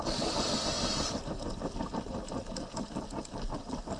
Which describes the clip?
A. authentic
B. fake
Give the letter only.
A